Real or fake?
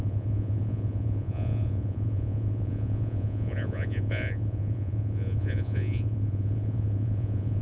fake